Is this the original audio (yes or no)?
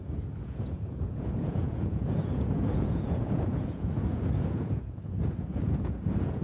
no